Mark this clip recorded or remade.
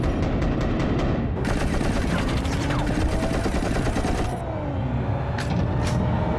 recorded